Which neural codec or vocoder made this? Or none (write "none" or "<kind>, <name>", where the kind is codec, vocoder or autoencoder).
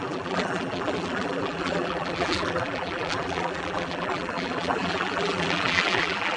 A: vocoder, BigVGAN v2